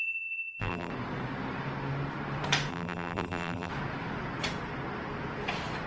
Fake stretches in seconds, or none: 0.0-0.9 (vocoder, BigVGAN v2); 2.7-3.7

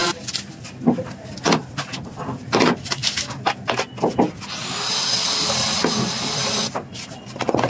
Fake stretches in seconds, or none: 1.1-3.0 (vocoder, BigVGAN v2); 6.1-7.7

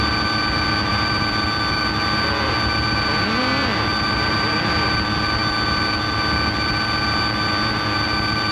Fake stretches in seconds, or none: none